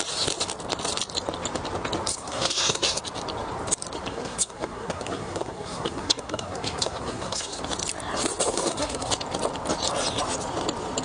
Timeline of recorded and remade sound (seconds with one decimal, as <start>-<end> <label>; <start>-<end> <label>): 0.0-2.1 recorded; 2.1-3.0 remade; 3.0-4.1 recorded; 4.1-7.6 remade; 7.6-8.5 recorded; 8.5-9.1 remade; 9.1-11.0 recorded